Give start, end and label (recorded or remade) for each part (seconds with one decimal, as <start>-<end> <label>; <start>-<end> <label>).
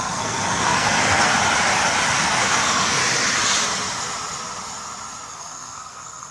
0.0-1.3 remade; 1.3-2.2 recorded; 2.2-3.0 remade; 3.0-5.3 recorded; 5.3-6.3 remade